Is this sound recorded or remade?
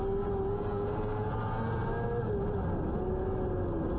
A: recorded